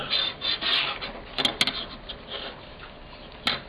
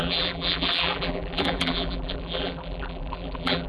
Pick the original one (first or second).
first